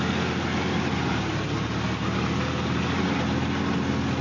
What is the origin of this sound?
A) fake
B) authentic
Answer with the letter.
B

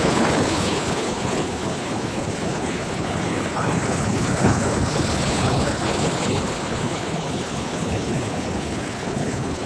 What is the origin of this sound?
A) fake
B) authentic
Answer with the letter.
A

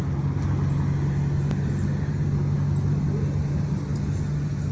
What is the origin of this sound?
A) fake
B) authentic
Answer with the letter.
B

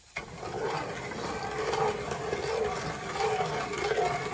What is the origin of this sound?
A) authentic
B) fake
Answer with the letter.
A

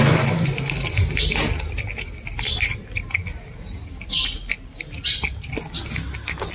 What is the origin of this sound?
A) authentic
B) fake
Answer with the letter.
A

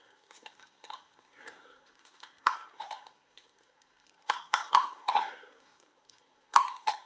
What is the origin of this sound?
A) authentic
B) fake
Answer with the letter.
B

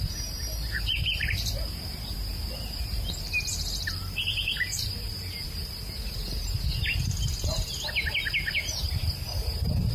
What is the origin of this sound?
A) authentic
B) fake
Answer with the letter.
B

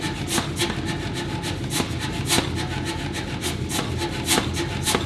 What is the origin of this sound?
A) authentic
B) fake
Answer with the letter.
A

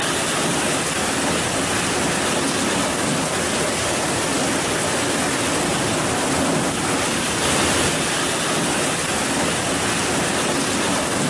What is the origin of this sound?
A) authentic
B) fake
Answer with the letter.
A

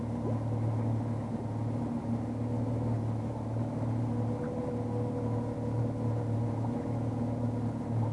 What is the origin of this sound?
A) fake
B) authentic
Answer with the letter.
B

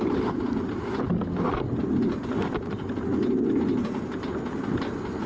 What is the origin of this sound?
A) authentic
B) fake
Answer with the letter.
A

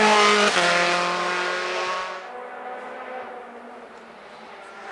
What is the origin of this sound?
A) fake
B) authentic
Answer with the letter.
B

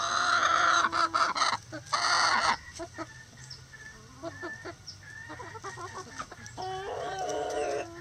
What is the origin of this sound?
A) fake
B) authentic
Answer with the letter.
B